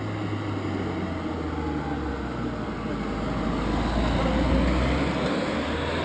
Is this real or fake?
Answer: real